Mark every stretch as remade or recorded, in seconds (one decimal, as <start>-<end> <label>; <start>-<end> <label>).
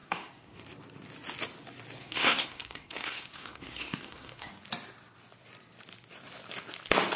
0.0-0.6 remade; 0.6-2.0 recorded; 2.0-4.5 remade; 4.5-7.2 recorded